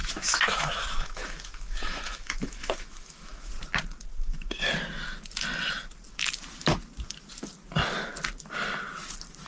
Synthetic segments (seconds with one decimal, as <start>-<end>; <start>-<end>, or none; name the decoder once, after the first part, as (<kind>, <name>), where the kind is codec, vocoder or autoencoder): 0.0-3.5 (autoencoder, DAC-VAE); 4.1-4.6